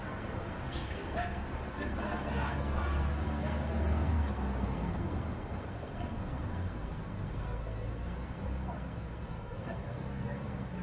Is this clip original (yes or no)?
no